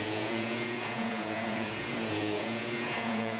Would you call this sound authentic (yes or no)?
no